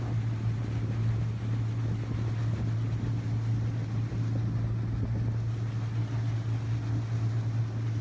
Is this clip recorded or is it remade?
recorded